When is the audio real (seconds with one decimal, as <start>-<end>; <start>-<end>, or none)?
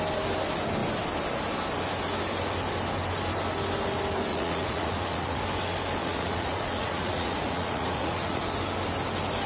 0.0-4.3; 5.4-6.0; 8.4-9.5